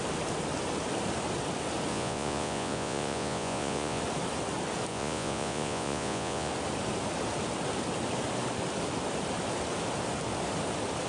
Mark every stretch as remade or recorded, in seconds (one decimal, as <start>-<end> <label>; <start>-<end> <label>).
0.0-1.9 recorded; 1.9-4.0 remade; 4.0-4.9 recorded; 4.9-6.5 remade; 6.5-11.1 recorded